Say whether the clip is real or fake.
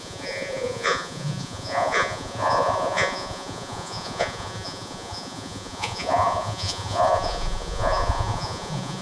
fake